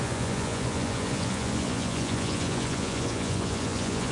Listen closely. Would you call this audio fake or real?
fake